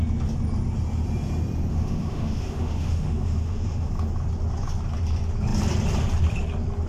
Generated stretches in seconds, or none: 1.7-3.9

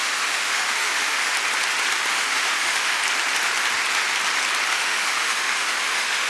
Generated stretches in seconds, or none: 0.0-1.3; 2.1-3.0; 4.7-6.3

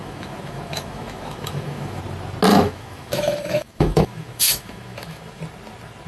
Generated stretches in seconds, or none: 0.0-2.0; 2.5-5.4